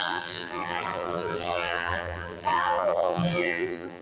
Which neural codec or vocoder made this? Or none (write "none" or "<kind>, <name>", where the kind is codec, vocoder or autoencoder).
vocoder, BigVGAN v2